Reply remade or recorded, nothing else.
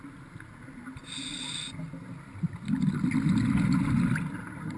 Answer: recorded